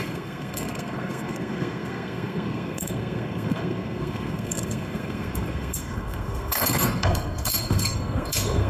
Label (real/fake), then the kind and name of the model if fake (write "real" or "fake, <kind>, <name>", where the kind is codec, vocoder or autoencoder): fake, codec, SNAC